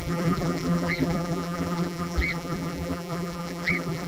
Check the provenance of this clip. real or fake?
fake